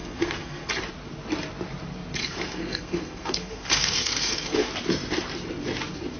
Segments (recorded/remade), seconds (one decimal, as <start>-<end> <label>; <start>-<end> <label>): 0.0-0.7 remade; 0.7-2.2 recorded; 2.2-4.7 remade; 4.7-6.2 recorded

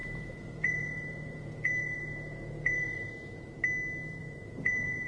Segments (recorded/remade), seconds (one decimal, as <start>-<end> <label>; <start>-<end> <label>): 0.0-3.1 remade; 3.1-4.2 recorded; 4.2-5.1 remade

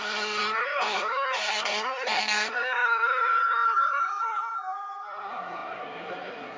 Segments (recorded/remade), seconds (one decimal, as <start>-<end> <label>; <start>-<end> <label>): 0.0-6.6 remade

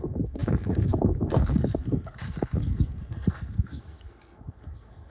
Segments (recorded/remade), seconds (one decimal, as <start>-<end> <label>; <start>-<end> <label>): 0.0-5.1 remade

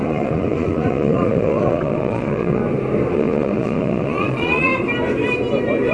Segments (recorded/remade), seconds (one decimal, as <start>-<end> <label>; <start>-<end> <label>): 0.0-2.6 remade; 2.6-3.1 recorded; 3.1-4.7 remade; 4.7-5.9 recorded